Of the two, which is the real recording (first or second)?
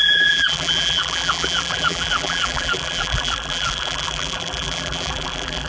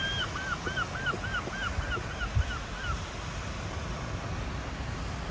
second